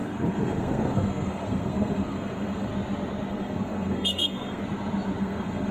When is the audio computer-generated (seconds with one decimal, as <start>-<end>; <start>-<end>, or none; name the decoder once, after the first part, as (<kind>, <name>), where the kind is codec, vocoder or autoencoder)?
0.0-2.7 (codec, SNAC); 3.3-4.6; 5.2-5.7